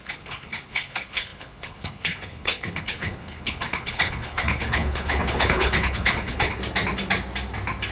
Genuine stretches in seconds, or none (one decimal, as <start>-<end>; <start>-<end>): 6.6-7.9